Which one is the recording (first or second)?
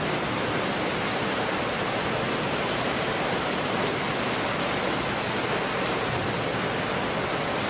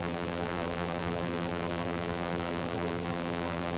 first